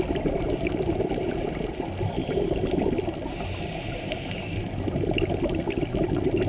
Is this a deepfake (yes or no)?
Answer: no